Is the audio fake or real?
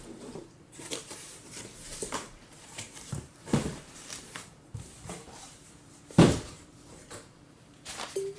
fake